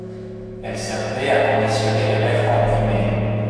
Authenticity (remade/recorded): remade